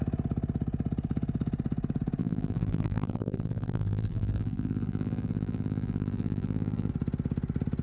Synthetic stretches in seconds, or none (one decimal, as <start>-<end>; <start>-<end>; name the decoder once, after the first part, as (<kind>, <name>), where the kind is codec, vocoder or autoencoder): 2.2-6.9 (vocoder, BigVGAN v2)